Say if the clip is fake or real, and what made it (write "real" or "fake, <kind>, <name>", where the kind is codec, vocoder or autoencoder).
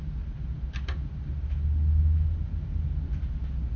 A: real